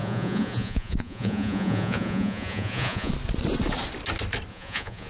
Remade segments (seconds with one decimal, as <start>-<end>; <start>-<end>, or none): 0.0-3.1; 4.5-5.1